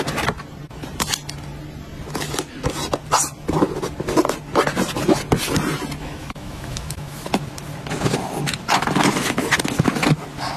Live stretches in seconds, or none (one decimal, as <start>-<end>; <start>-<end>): 0.0-6.0; 7.2-10.6